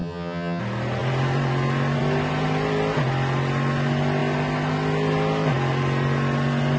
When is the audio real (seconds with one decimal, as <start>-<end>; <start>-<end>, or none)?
0.6-6.8